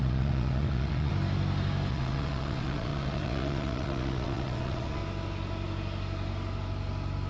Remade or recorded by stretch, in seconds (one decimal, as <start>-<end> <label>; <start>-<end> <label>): 0.0-1.1 remade; 1.1-1.9 recorded; 1.9-5.0 remade; 5.0-7.3 recorded